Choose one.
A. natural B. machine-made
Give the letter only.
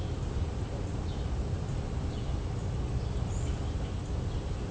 A